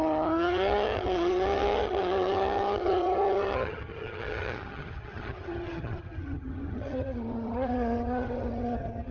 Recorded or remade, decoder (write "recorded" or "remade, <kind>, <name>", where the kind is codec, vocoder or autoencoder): remade, vocoder, HiFi-GAN